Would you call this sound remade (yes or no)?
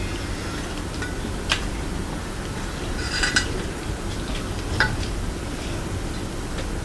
yes